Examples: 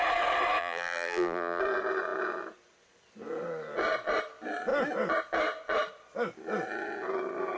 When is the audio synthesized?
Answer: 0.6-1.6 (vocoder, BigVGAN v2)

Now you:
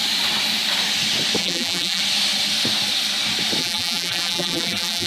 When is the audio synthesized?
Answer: 1.4-2.0 (vocoder, BigVGAN v2); 3.6-5.1

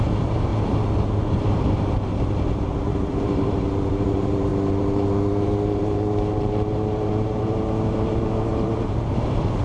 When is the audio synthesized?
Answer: 0.0-0.5 (vocoder, BigVGAN v2); 3.1-9.6

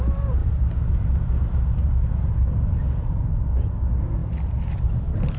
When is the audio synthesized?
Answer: 0.4-2.3 (vocoder, BigVGAN v2)

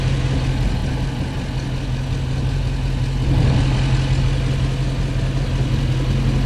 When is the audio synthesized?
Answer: none

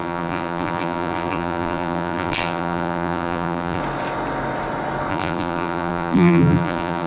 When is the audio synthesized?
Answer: 0.0-3.8 (vocoder, BigVGAN v2); 5.1-7.1

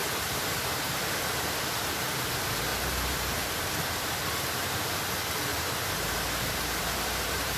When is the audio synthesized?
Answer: 0.0-0.9 (vocoder, BigVGAN v2); 2.7-3.7; 5.5-7.6

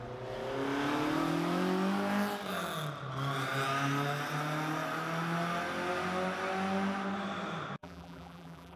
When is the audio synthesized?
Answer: 7.8-8.8 (vocoder, BigVGAN v2)